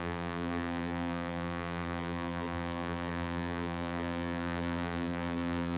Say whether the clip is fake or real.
fake